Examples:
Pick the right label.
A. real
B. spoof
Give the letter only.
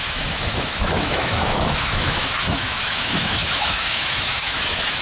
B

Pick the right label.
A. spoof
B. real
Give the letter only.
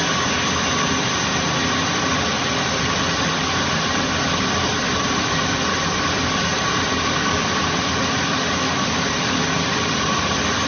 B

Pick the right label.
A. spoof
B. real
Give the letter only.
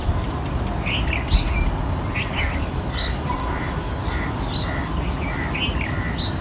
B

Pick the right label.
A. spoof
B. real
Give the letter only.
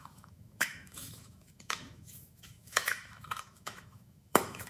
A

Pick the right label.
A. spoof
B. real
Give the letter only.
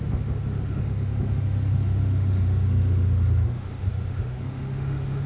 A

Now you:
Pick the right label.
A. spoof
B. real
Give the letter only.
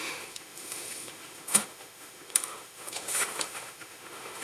A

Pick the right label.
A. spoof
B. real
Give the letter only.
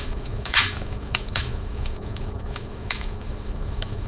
A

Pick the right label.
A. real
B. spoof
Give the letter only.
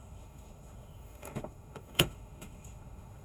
B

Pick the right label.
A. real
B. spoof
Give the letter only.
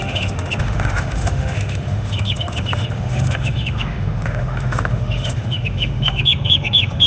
B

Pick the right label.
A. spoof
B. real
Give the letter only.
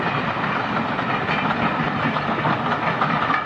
B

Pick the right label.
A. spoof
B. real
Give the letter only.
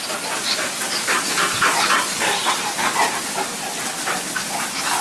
B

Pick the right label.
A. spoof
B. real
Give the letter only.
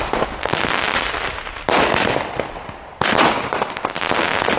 B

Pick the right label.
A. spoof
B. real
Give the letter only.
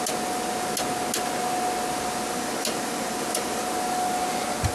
B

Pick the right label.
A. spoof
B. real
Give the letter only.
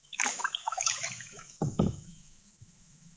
A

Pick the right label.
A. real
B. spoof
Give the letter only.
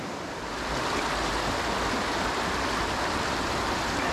A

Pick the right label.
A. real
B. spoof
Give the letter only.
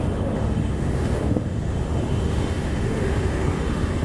B